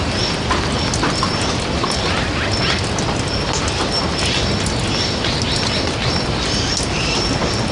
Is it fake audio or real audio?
real